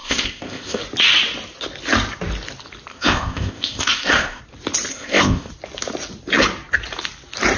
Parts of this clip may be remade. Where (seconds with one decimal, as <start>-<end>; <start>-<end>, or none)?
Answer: 0.0-0.8; 2.9-4.4; 4.9-5.5